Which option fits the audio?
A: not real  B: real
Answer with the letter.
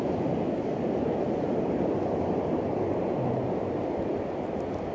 B